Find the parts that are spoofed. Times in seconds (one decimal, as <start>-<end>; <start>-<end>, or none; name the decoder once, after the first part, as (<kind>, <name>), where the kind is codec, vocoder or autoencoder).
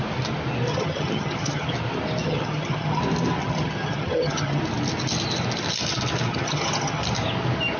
0.7-1.7 (vocoder, HiFi-GAN); 2.2-3.0; 3.4-4.6; 6.3-7.0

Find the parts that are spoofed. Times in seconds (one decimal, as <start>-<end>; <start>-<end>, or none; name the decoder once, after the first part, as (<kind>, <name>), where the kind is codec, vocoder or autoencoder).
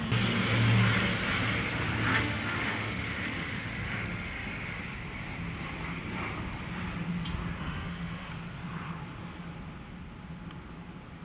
2.1-4.8 (autoencoder, DAC-VAE); 7.6-8.3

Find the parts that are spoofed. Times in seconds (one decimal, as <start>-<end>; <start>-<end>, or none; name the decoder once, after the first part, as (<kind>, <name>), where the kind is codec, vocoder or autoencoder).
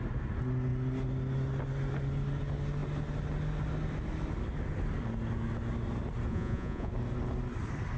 6.3-6.9 (vocoder, Vocos)